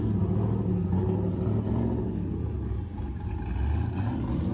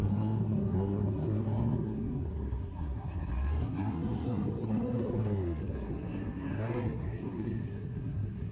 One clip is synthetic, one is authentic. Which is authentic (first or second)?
first